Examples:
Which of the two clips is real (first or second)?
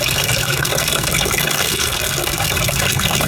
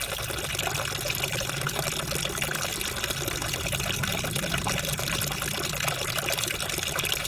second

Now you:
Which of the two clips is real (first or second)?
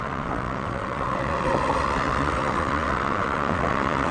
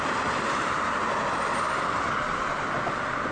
second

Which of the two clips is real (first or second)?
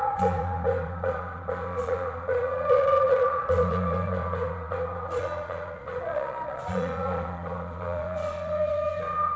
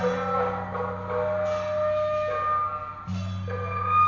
second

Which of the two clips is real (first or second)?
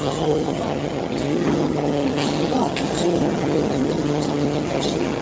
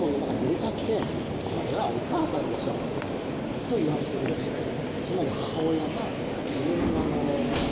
second